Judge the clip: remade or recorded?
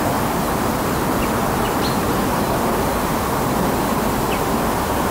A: recorded